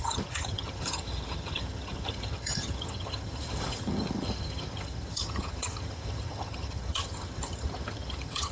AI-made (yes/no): yes